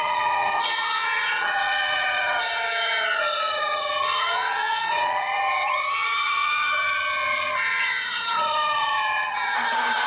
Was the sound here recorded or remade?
remade